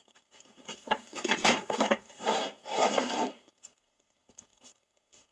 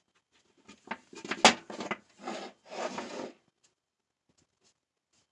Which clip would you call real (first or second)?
second